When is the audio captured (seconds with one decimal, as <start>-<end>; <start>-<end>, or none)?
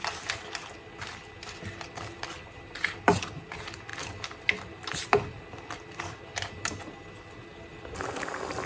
0.0-3.9; 5.8-8.7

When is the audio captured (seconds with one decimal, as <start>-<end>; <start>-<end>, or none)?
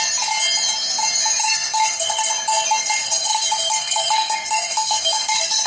0.0-1.4; 2.3-2.8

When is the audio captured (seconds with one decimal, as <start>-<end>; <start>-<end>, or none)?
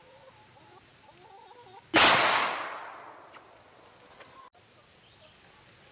0.0-5.9